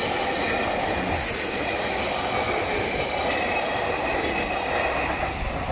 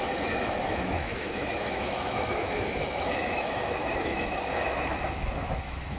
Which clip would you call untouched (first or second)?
first